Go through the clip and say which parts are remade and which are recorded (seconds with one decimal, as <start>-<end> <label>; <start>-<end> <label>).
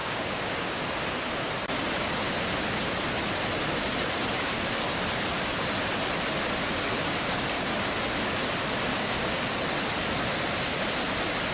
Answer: 0.0-0.8 remade; 0.8-8.9 recorded; 8.9-9.4 remade; 9.4-11.5 recorded